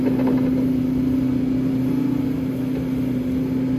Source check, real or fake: real